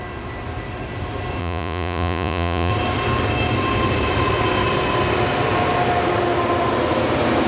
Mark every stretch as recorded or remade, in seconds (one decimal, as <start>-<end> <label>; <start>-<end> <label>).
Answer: 0.0-1.4 recorded; 1.4-2.7 remade; 2.7-7.5 recorded